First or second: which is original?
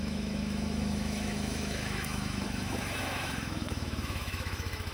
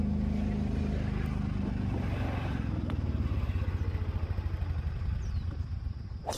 second